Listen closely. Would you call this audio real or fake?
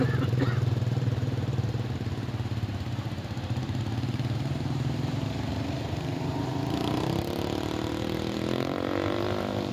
fake